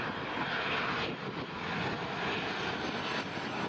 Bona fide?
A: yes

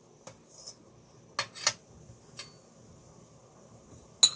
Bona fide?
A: yes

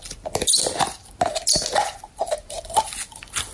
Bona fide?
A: yes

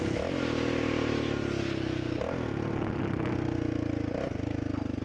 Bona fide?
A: yes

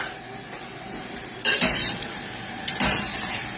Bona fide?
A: yes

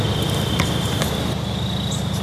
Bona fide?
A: yes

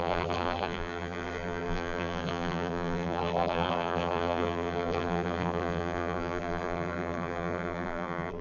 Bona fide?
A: no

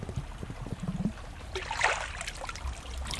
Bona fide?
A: yes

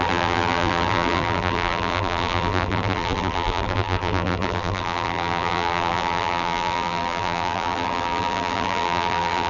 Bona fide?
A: no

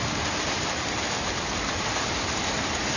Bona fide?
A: no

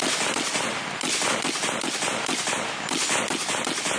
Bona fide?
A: yes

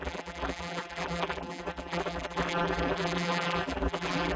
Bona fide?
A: no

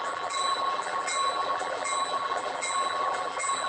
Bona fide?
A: no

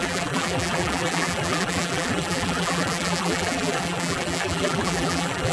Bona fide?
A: no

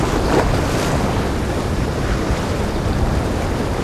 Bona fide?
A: no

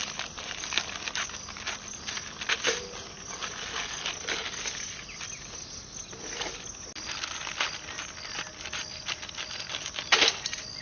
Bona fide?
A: yes